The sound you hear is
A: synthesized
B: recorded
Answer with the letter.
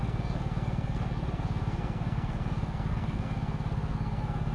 A